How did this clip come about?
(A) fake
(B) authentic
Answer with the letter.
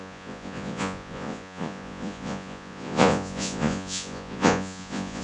A